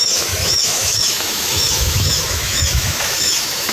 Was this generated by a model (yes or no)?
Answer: yes